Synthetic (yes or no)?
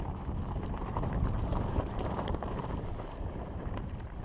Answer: yes